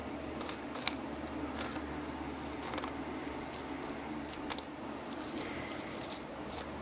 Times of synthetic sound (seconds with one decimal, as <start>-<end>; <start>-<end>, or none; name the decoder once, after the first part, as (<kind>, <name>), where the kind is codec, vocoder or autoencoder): none